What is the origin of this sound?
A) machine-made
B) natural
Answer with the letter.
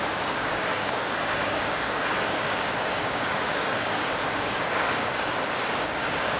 A